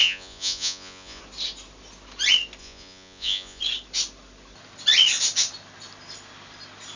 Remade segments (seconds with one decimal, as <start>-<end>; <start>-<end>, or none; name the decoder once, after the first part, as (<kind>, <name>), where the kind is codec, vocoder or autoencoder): 0.0-1.2 (vocoder, Vocos); 2.6-3.6